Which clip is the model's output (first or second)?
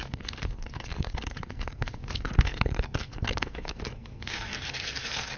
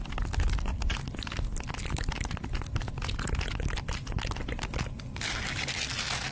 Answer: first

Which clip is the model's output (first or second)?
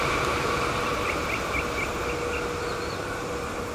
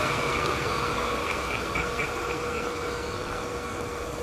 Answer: second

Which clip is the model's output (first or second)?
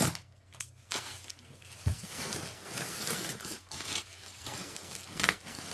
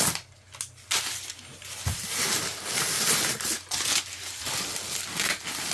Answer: first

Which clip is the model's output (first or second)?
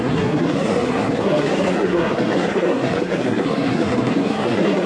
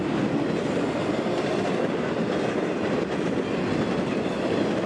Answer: first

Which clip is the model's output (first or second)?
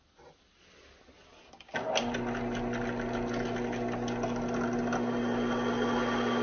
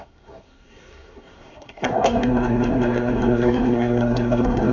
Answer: second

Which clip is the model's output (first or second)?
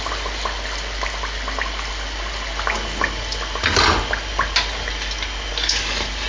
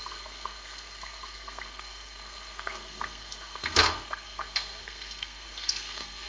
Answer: second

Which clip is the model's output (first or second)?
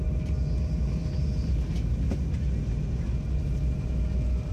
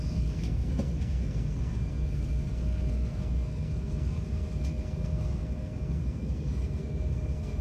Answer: second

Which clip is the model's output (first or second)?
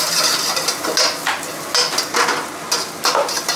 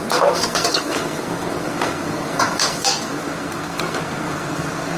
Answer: second